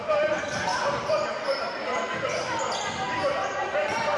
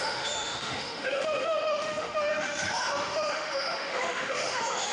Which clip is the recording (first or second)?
first